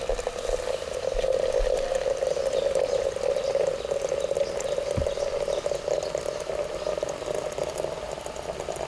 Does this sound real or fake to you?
real